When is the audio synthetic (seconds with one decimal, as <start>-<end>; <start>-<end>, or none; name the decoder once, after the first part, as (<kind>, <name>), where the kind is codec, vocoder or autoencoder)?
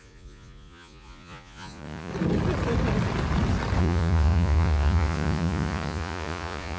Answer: 0.0-2.1 (vocoder, Vocos); 3.8-6.8